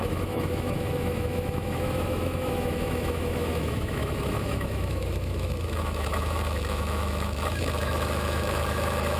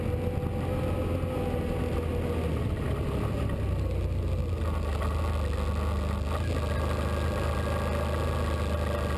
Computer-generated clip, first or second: first